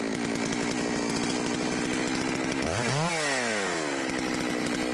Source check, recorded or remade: recorded